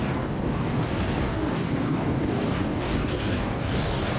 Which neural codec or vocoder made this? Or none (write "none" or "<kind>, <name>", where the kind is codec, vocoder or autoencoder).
codec, DAC